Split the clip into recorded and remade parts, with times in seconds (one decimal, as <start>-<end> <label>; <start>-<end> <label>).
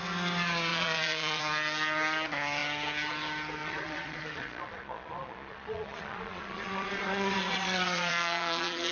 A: 0.0-0.7 recorded; 0.7-1.4 remade; 1.4-3.6 recorded; 3.6-8.9 remade